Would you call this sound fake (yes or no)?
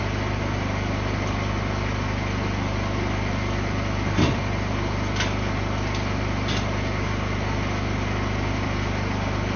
no